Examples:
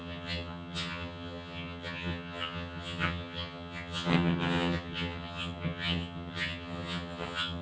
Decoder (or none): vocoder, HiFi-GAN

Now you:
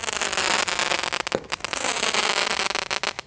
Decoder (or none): none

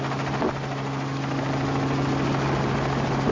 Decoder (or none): none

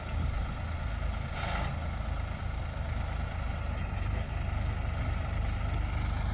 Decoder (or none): none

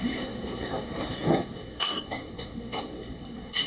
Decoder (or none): codec, SNAC